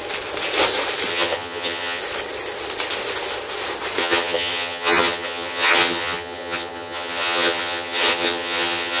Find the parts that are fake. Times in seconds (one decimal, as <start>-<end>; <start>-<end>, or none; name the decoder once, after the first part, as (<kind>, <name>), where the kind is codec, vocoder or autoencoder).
1.1-2.0 (vocoder, HiFi-GAN); 4.0-9.0